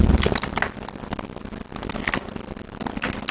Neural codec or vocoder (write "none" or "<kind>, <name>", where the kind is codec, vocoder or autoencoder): none